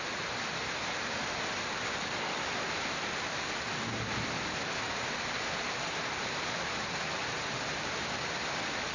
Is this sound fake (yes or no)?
no